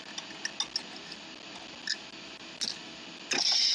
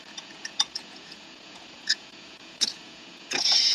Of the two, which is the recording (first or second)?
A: first